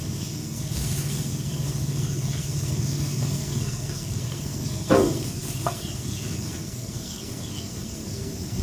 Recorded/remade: remade